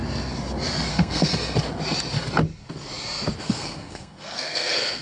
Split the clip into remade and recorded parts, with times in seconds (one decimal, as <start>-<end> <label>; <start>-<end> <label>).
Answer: 0.0-0.9 recorded; 0.9-1.3 remade; 1.3-3.4 recorded; 3.4-5.0 remade